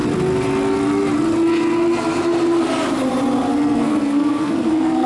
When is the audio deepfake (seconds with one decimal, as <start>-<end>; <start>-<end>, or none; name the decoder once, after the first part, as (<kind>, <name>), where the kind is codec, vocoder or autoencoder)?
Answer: 3.5-5.1 (codec, SNAC)